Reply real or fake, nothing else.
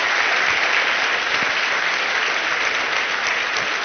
real